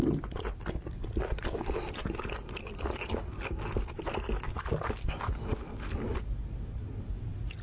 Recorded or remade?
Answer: recorded